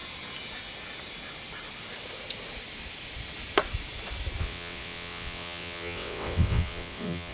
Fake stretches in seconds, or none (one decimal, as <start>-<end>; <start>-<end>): 4.4-7.3

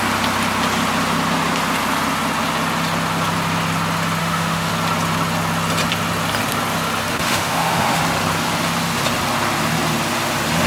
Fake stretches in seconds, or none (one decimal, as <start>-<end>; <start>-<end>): 4.2-4.7; 7.1-8.0

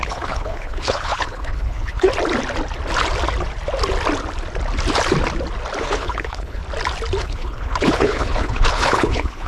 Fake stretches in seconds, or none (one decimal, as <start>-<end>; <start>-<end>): 0.0-2.1; 5.8-6.6; 7.2-9.5

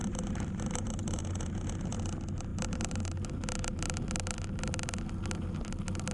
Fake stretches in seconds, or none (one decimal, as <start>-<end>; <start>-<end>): 0.0-1.2

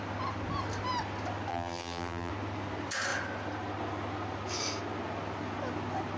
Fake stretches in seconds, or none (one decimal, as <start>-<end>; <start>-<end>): 1.5-2.3

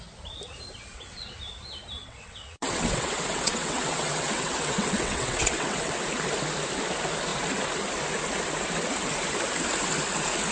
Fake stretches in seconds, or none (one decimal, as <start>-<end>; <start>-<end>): 0.9-1.4; 2.0-5.9

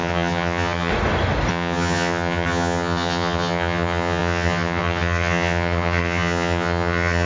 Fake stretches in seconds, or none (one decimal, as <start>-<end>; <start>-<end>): 0.0-0.9; 1.5-7.3